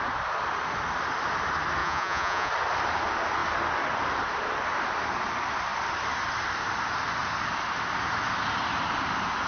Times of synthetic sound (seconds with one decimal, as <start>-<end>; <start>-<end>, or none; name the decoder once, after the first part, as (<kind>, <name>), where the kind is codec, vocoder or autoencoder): 1.8-2.5 (vocoder, Vocos)